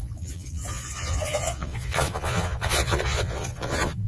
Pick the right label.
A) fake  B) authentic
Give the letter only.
A